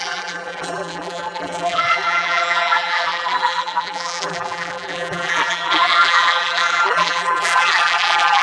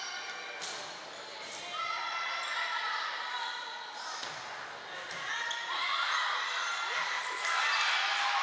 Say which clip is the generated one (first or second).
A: first